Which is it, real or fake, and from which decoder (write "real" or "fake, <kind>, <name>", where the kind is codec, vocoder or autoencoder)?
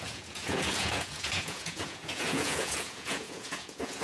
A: fake, vocoder, Vocos